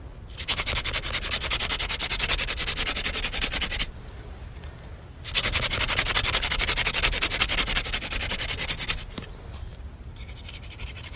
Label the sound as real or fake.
real